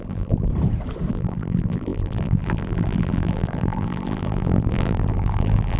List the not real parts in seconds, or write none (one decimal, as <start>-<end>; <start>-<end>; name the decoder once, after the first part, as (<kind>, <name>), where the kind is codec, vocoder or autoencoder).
0.0-0.5 (vocoder, BigVGAN v2); 1.1-5.8